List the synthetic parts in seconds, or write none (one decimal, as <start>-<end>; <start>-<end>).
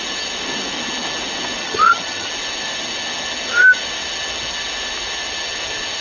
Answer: 1.6-2.3